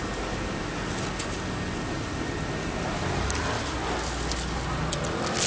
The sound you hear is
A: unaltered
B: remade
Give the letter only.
A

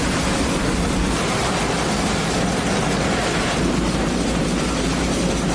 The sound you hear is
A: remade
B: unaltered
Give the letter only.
A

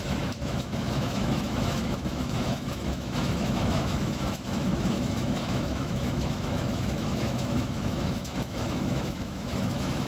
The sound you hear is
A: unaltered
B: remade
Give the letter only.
B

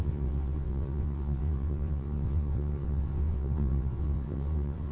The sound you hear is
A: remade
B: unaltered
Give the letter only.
A